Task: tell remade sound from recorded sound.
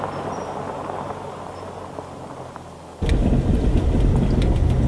recorded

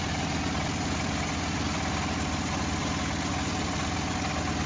recorded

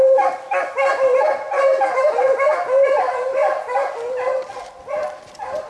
recorded